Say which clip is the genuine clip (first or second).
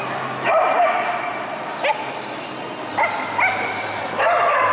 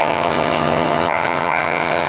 first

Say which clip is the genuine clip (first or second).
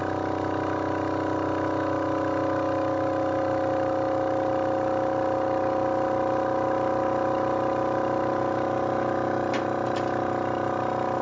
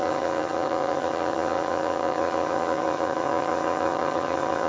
first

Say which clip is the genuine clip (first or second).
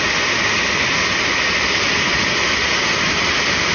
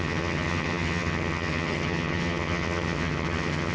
first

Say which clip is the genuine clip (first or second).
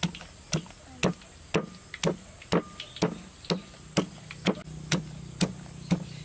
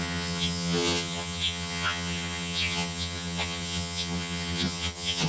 first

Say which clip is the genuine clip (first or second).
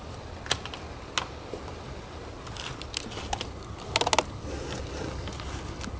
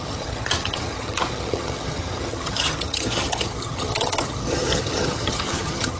first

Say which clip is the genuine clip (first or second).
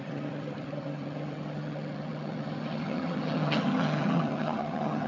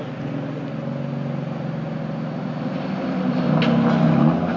second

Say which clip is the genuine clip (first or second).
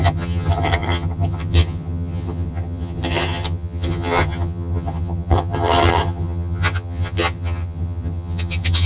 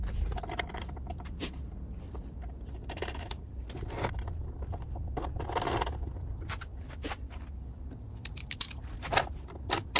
second